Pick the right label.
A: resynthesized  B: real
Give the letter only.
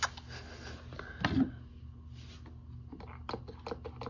B